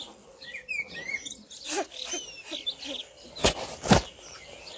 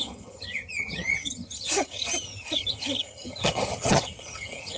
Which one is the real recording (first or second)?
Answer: first